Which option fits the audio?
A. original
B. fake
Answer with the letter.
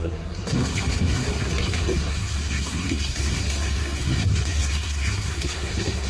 B